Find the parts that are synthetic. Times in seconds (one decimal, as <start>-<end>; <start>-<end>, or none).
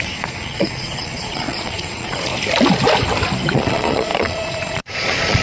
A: 0.0-2.3; 3.5-5.4